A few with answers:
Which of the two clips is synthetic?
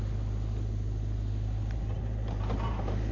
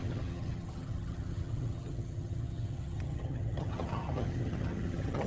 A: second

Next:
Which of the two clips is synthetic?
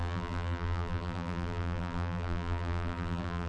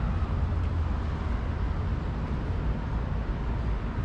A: first